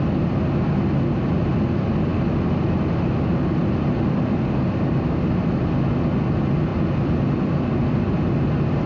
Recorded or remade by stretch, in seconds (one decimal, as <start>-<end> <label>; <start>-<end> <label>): 0.0-6.7 recorded; 6.7-8.1 remade; 8.1-8.9 recorded